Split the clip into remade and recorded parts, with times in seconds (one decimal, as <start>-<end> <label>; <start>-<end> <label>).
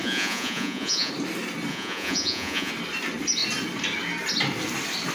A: 0.0-1.1 remade; 1.1-1.7 recorded; 1.7-2.7 remade; 2.7-5.1 recorded